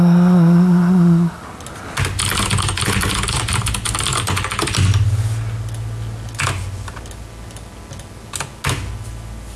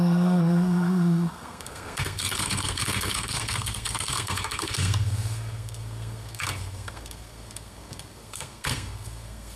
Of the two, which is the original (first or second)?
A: first